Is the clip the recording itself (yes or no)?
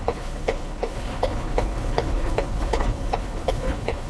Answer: no